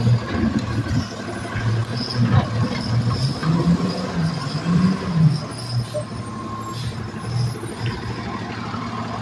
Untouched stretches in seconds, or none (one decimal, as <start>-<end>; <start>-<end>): 0.0-9.2